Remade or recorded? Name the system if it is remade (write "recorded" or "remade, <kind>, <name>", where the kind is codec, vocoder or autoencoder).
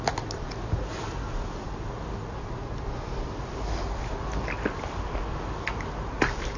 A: recorded